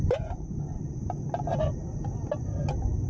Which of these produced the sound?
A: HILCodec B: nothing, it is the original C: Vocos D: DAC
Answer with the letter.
B